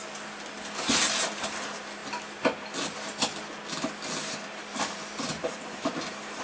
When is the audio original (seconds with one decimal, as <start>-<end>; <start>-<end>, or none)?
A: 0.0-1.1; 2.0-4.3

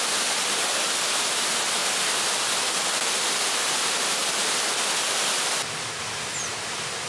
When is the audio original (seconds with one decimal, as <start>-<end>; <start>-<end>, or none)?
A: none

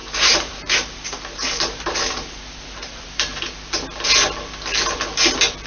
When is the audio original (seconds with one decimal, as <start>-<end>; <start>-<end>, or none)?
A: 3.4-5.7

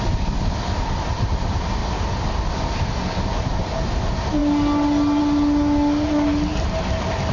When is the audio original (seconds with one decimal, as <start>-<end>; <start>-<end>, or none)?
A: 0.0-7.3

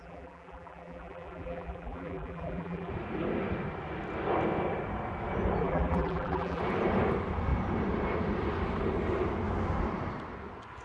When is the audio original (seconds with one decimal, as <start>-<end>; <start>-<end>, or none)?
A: 2.9-5.6; 6.6-10.8

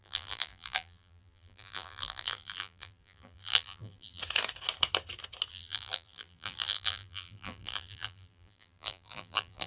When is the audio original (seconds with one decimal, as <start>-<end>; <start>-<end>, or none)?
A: 4.2-5.5